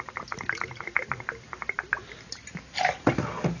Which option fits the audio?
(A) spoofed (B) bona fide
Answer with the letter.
B